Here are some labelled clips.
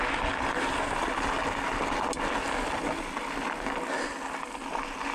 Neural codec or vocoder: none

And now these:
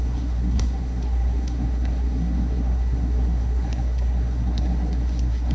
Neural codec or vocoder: codec, SNAC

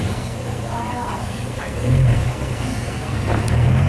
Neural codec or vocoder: codec, SNAC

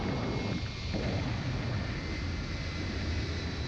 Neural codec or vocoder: none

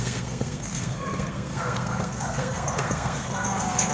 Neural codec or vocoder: codec, SNAC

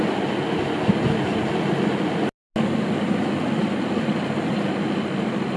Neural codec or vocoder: none